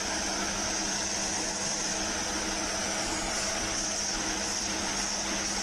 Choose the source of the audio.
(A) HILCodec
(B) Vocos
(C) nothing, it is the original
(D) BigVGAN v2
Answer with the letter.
C